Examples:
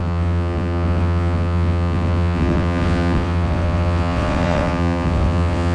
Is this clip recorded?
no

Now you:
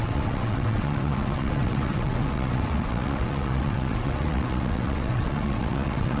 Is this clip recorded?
no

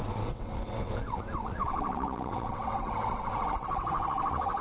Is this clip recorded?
no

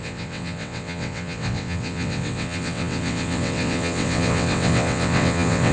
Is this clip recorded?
no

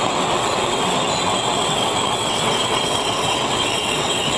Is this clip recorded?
no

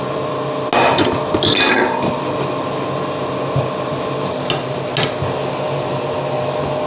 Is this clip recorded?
yes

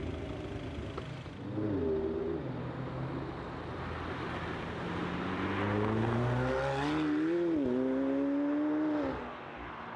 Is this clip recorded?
yes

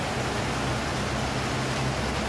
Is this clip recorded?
yes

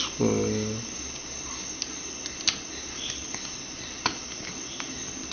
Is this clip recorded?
yes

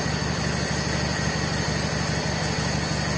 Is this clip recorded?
yes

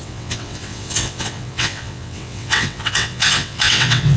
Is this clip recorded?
no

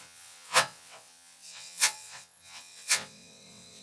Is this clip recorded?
no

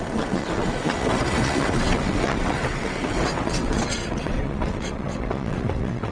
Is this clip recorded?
no